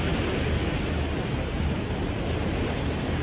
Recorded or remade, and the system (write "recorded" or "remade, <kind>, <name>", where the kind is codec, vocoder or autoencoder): recorded